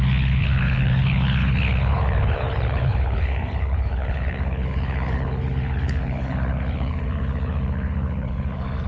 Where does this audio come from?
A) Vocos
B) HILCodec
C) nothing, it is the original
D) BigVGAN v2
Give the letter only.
B